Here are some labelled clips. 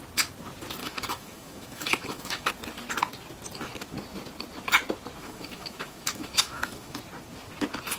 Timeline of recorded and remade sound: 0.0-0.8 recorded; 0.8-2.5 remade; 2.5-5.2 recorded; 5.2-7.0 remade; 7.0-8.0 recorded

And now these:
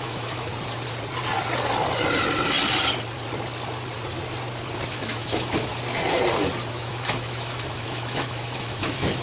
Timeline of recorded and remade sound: 0.0-0.5 remade; 0.5-4.9 recorded; 4.9-5.7 remade; 5.7-6.7 recorded; 6.7-9.2 remade

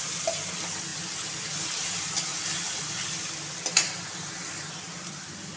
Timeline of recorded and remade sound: 0.0-5.6 recorded

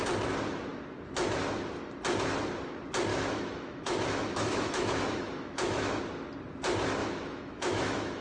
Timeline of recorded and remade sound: 0.0-3.1 recorded; 3.1-6.0 remade; 6.0-7.0 recorded; 7.0-8.2 remade

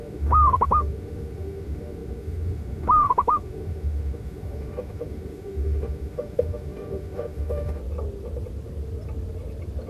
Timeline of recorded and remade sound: 0.0-7.8 remade; 7.8-9.9 recorded

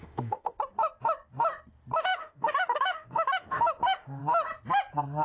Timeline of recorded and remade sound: 0.0-0.6 remade; 0.6-2.1 recorded; 2.1-4.2 remade; 4.2-5.2 recorded

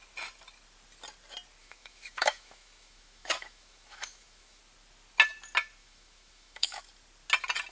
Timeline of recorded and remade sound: 0.0-1.6 recorded; 1.6-4.6 remade; 4.6-5.8 recorded; 5.8-6.8 remade; 6.8-7.7 recorded